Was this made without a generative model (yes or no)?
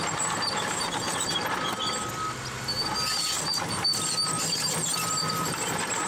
yes